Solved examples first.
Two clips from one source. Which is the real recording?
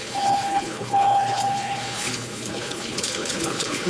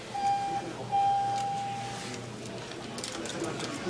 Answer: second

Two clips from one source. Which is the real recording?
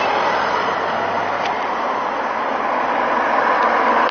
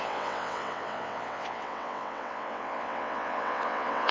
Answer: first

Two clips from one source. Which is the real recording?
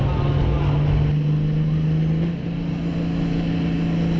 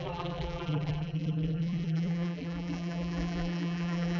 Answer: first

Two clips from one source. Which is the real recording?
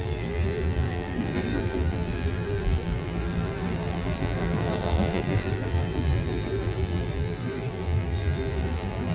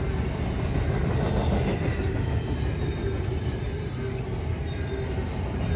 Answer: second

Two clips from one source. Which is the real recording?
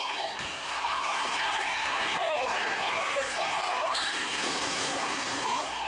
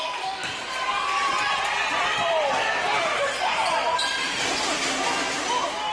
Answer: second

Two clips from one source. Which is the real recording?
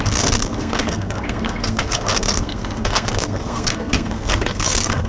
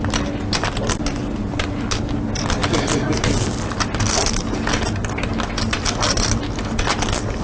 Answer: second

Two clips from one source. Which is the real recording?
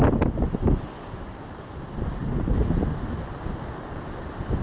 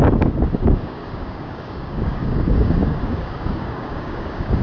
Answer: first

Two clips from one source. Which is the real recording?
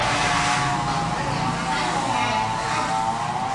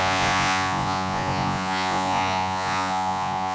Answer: first